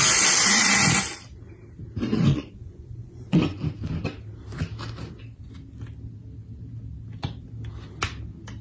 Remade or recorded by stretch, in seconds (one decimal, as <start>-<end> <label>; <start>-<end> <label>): 0.0-2.3 recorded; 2.3-3.7 remade; 3.7-8.6 recorded